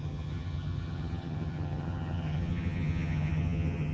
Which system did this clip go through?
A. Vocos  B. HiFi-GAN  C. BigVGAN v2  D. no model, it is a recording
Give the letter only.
B